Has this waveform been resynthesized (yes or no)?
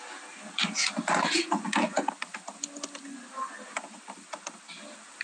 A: no